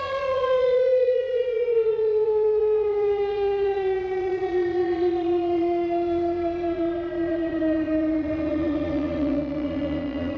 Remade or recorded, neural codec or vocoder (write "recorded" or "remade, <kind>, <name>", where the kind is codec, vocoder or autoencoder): remade, vocoder, Vocos